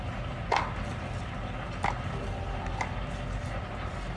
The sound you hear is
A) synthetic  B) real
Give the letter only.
B